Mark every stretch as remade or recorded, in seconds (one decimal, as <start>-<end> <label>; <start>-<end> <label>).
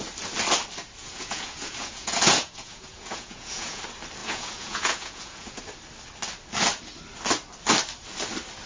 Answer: 0.0-1.0 recorded; 1.0-3.8 remade; 3.8-4.2 recorded; 4.2-5.6 remade; 5.6-8.7 recorded